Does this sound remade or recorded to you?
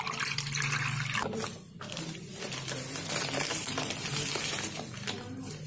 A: remade